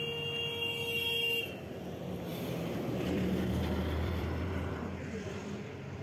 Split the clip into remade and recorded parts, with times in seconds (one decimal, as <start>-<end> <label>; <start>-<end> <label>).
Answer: 0.0-2.3 recorded; 2.3-5.4 remade; 5.4-6.0 recorded